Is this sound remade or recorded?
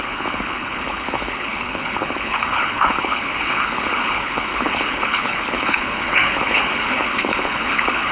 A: remade